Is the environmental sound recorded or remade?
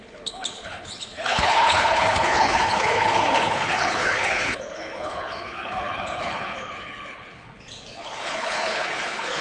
remade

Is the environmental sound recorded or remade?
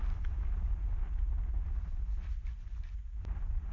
recorded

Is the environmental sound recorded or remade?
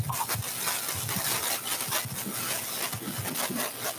recorded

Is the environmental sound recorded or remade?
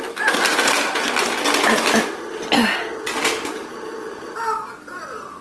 recorded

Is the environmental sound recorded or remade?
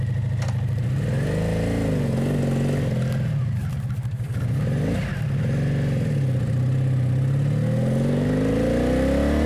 recorded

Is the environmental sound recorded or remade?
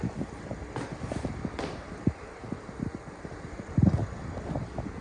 recorded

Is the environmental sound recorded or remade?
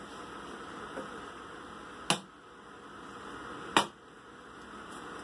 recorded